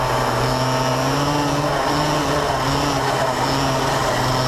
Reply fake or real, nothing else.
real